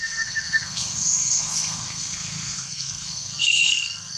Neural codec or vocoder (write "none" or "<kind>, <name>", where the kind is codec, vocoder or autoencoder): codec, SNAC